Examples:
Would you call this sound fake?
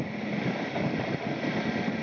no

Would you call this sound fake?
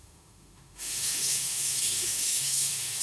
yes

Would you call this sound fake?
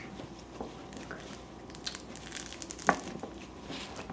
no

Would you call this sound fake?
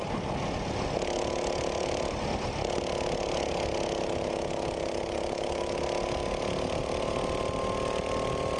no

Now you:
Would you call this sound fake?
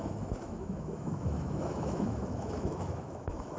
yes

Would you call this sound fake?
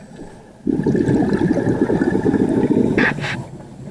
no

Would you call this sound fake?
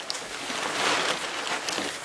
no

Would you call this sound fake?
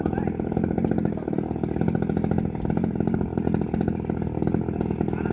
no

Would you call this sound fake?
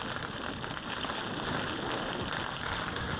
no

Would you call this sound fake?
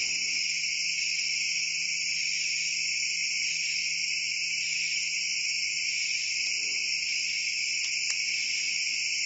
no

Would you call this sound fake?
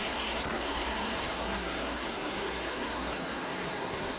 yes